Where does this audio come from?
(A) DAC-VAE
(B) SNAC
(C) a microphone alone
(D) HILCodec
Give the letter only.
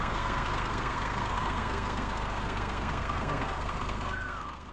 B